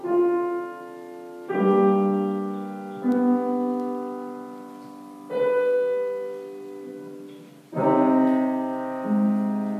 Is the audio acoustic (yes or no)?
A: yes